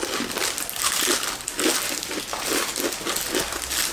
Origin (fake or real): real